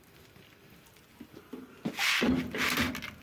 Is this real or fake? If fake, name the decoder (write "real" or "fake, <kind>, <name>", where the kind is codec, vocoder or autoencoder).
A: real